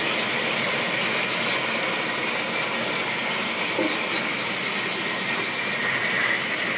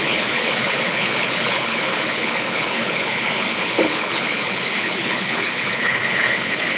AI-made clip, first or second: second